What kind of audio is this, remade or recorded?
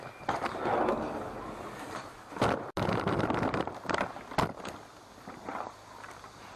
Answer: recorded